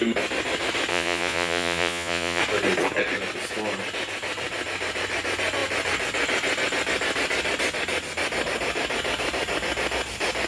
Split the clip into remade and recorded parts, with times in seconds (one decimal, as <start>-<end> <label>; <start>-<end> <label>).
0.0-0.9 recorded; 0.9-2.4 remade; 2.4-10.5 recorded